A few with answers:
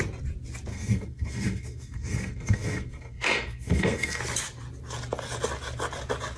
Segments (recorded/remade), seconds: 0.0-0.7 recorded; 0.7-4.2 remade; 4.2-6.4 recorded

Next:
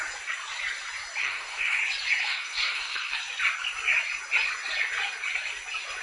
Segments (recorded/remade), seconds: 0.0-1.2 recorded; 1.2-1.8 remade; 1.8-2.2 recorded; 2.2-3.2 remade; 3.2-6.0 recorded

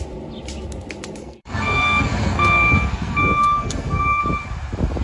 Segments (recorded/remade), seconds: 0.0-1.2 recorded; 1.2-4.2 remade; 4.2-5.0 recorded